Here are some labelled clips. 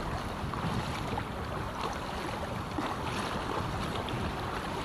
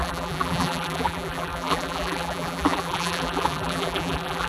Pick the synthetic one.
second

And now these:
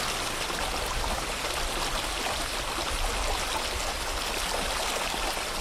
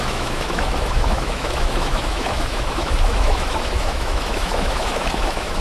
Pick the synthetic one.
second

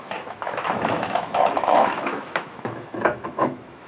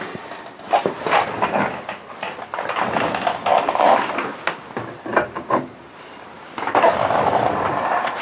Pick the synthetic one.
first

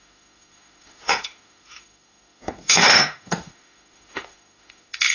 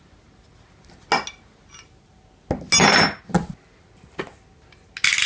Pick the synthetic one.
first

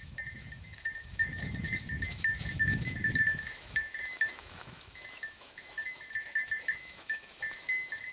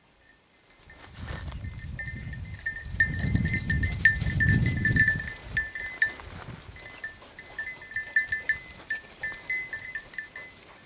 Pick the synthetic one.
first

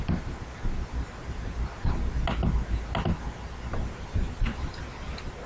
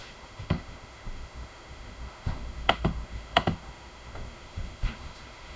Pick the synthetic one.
second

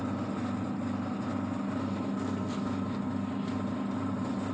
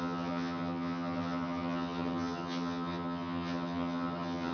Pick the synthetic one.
second